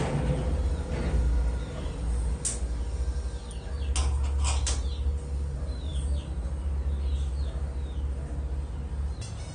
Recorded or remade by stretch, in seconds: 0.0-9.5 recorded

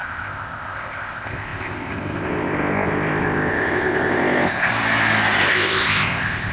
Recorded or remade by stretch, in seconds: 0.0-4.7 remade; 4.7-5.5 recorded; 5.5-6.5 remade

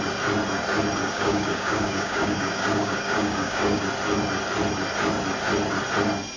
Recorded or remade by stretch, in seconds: 0.0-1.0 recorded; 1.0-3.8 remade; 3.8-6.4 recorded